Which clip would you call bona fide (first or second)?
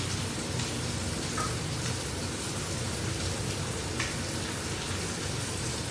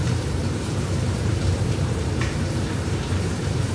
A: first